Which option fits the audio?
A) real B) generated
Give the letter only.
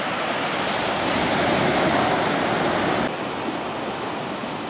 A